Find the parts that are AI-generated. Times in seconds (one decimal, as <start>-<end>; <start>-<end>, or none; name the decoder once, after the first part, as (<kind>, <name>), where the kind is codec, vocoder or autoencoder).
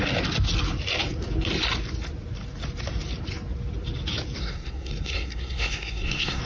4.4-6.4 (codec, SNAC)